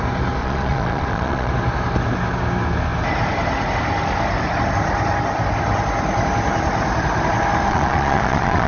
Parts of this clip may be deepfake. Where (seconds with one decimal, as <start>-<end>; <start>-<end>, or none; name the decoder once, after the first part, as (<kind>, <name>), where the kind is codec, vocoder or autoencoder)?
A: 0.4-1.5 (vocoder, Vocos); 7.7-8.7